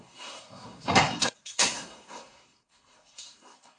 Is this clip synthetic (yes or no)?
yes